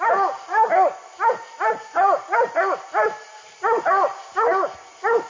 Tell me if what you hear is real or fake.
real